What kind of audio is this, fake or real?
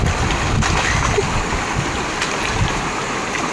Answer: real